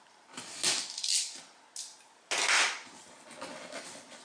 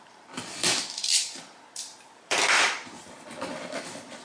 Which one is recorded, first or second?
first